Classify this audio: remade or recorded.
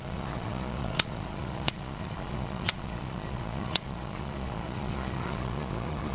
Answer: remade